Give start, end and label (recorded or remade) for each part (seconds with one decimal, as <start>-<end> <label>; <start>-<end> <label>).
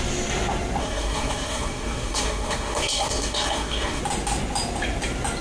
0.0-0.8 recorded; 0.8-4.0 remade; 4.0-5.4 recorded